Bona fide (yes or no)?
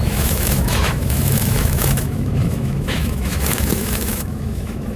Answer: no